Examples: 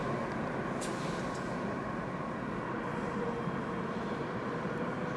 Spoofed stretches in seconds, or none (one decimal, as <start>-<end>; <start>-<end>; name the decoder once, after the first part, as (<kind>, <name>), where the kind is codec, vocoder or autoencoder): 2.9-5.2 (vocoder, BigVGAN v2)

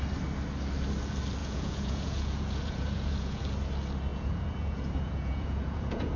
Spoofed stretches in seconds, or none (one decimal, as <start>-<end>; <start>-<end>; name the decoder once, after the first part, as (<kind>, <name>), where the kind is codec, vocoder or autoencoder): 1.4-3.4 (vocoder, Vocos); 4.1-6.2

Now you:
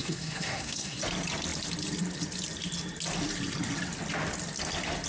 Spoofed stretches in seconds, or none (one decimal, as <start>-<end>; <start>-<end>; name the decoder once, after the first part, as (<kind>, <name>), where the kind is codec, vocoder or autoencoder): 0.0-1.0 (codec, SNAC)

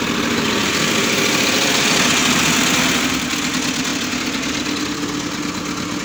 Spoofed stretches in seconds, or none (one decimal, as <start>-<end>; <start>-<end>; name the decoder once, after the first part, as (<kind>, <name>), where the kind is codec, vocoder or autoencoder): 2.2-3.5 (vocoder, BigVGAN v2); 3.9-4.8

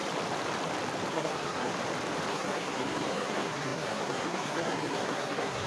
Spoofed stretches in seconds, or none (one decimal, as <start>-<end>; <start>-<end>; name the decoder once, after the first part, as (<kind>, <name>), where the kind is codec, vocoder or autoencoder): 1.1-1.7 (codec, SNAC); 2.3-5.7

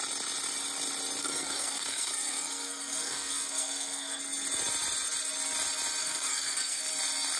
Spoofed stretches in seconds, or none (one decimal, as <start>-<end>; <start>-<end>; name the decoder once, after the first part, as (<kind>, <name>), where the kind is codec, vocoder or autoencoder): 1.2-4.2 (codec, SNAC); 6.0-6.8

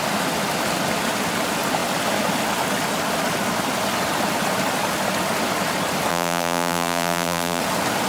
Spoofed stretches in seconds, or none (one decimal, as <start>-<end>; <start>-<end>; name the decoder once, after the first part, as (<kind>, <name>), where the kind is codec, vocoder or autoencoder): 6.1-7.6 (vocoder, BigVGAN v2)